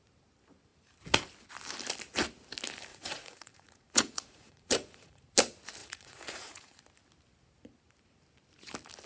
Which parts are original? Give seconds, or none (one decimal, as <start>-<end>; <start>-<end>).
0.0-2.9; 5.2-5.8; 6.8-9.1